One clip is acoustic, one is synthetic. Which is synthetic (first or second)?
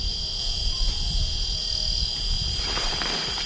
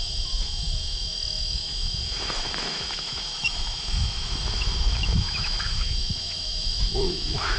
second